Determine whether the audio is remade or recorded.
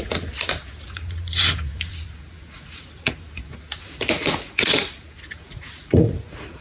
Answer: remade